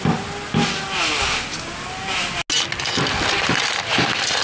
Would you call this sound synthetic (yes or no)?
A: no